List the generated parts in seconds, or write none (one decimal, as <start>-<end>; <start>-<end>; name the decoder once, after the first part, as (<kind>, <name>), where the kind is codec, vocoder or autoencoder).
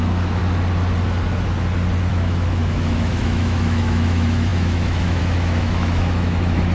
0.0-0.4 (autoencoder, DAC-VAE); 2.1-6.7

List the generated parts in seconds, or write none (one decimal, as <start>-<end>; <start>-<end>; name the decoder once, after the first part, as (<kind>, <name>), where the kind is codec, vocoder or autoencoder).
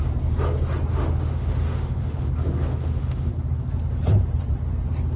0.9-2.3 (autoencoder, DAC-VAE); 2.7-3.3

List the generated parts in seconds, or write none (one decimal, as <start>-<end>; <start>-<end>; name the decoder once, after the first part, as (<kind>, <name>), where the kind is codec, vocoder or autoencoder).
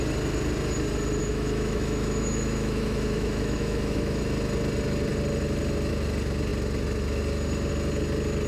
1.2-4.2 (autoencoder, DAC-VAE)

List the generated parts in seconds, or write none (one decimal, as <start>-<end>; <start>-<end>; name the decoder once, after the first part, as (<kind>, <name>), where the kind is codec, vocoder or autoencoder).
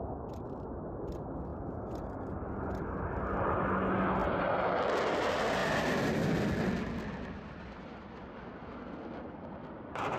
none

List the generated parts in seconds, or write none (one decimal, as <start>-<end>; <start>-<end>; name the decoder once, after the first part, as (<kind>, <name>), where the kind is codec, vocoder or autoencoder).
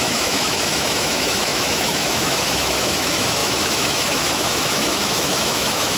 0.0-6.0 (autoencoder, DAC-VAE)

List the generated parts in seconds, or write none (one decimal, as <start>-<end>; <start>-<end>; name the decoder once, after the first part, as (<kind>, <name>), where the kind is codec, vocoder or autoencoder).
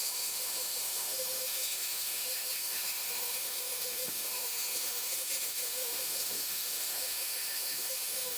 0.0-8.4 (autoencoder, DAC-VAE)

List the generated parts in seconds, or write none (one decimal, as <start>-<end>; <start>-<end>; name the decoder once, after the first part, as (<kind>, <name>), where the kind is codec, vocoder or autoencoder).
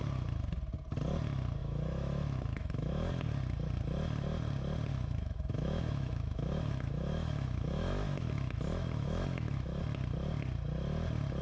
1.6-3.1 (autoencoder, DAC-VAE); 4.9-9.8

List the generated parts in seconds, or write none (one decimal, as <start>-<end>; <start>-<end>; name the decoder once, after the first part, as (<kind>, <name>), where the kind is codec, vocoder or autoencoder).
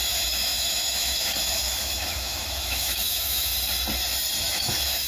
0.0-3.5 (autoencoder, DAC-VAE); 4.5-5.1